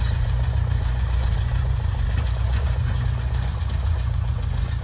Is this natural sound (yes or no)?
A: no